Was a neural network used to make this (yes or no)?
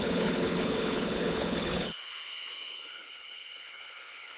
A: yes